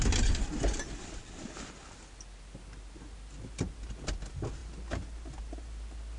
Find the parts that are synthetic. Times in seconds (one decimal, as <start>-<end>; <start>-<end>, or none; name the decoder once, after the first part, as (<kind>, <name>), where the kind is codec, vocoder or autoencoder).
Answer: none